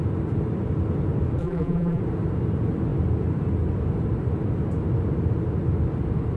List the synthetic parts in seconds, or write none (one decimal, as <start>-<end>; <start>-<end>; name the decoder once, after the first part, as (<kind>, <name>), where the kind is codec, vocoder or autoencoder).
1.4-2.0 (vocoder, BigVGAN v2)